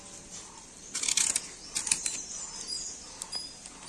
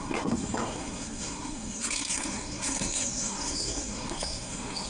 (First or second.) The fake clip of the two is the second